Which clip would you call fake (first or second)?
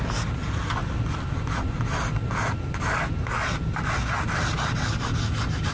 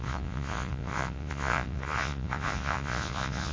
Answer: second